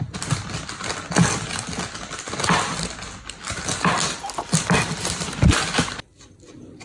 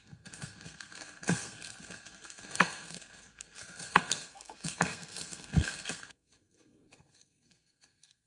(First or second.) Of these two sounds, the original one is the first